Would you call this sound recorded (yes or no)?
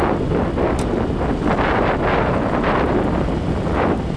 yes